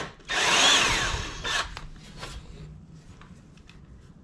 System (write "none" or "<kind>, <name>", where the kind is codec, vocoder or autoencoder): none